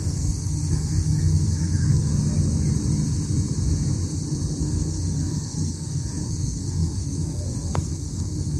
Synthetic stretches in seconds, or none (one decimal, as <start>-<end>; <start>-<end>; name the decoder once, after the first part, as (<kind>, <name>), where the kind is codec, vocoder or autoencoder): 0.0-2.1 (codec, SNAC); 4.6-8.6